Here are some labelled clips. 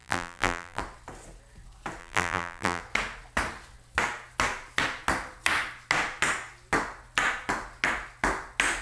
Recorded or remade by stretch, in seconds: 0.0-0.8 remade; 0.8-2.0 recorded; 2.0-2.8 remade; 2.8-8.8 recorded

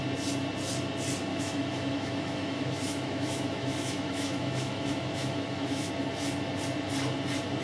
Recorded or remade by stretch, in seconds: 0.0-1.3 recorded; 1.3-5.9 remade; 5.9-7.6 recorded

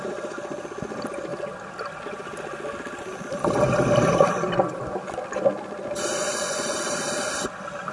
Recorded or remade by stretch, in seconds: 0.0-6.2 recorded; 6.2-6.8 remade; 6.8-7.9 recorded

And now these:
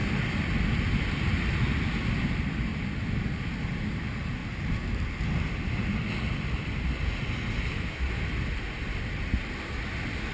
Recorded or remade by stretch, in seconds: 0.0-7.7 recorded; 7.7-8.2 remade; 8.2-10.3 recorded